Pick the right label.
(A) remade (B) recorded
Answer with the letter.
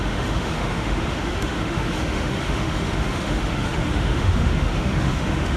A